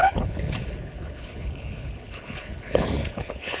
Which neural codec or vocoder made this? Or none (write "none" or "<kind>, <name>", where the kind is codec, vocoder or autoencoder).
codec, HILCodec